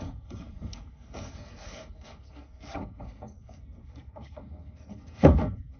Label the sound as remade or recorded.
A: remade